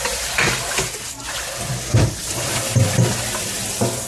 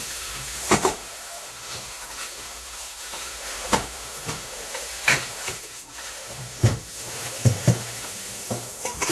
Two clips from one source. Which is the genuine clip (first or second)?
first